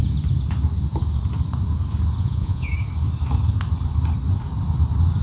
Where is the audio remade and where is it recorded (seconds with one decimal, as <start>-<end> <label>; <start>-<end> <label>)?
0.0-2.2 recorded; 2.2-2.7 remade; 2.7-5.2 recorded